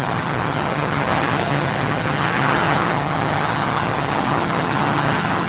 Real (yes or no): no